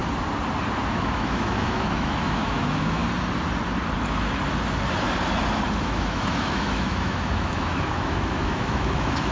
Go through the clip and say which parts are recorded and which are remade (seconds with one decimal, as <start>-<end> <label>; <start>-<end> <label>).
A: 0.0-0.8 recorded; 0.8-3.0 remade; 3.0-5.7 recorded; 5.7-9.3 remade